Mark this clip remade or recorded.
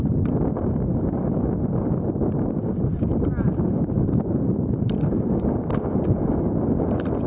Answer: recorded